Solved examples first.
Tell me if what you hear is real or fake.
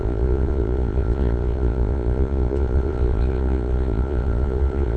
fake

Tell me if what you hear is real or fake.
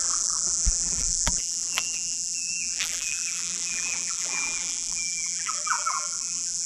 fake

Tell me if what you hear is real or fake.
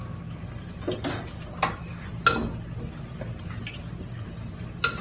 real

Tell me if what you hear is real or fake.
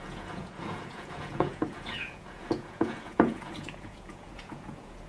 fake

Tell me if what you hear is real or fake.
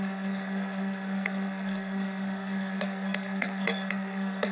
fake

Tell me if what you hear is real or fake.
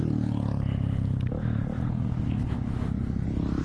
real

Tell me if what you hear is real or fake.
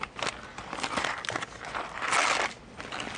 real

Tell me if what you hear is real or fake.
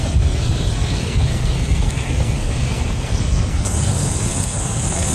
fake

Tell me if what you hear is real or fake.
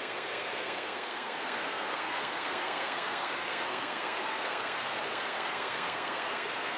fake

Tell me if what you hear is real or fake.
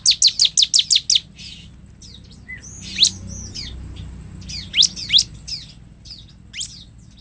real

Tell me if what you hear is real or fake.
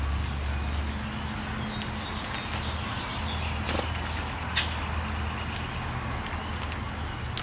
real